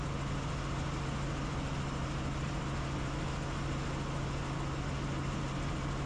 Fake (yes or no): no